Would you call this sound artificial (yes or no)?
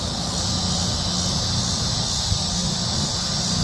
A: no